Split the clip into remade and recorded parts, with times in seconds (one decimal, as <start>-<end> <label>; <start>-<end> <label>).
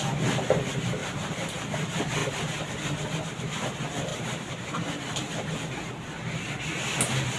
0.0-1.0 recorded; 1.0-1.6 remade; 1.6-2.2 recorded; 2.2-3.4 remade; 3.4-4.1 recorded; 4.1-5.7 remade; 5.7-7.4 recorded